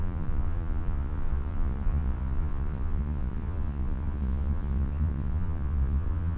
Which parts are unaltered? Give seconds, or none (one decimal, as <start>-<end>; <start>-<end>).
none